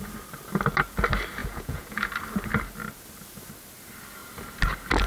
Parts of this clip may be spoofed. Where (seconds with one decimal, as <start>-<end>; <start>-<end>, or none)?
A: 1.4-2.1